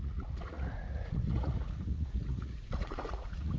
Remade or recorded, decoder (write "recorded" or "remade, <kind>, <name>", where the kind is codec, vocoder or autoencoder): remade, vocoder, Vocos